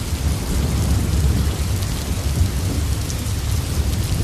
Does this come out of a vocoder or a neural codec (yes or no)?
no